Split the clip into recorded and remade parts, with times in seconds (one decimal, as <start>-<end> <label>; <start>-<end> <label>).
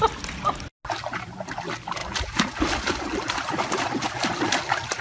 0.0-5.0 recorded